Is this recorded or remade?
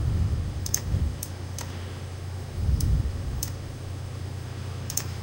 remade